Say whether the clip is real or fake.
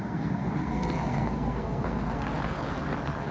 fake